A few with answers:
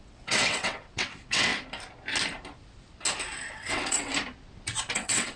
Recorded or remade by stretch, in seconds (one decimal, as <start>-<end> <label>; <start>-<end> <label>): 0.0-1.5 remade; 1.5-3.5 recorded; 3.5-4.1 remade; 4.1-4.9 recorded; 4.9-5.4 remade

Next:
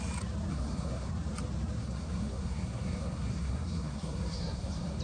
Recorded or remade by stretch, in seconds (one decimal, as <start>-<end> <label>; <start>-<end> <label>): 0.0-0.5 recorded; 0.5-1.1 remade; 1.1-1.8 recorded; 1.8-5.0 remade

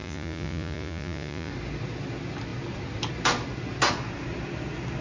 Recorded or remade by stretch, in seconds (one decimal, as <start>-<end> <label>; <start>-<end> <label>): 0.0-1.5 remade; 1.5-5.0 recorded

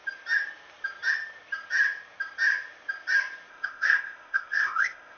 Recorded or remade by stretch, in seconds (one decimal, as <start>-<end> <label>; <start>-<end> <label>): 0.0-3.5 recorded; 3.5-5.2 remade

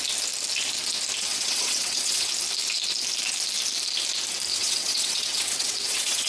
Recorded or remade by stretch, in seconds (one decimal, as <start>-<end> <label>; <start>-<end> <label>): 0.0-1.3 recorded; 1.3-2.3 remade; 2.3-4.5 recorded; 4.5-6.3 remade

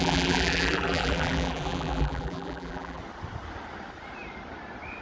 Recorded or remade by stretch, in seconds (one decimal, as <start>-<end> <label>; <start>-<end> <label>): 0.0-3.0 remade; 3.0-5.0 recorded